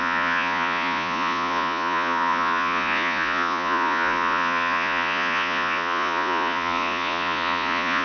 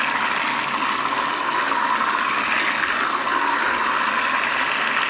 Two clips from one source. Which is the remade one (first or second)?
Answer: first